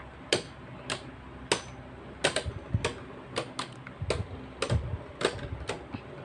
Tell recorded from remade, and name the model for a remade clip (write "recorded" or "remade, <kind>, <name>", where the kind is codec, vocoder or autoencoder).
recorded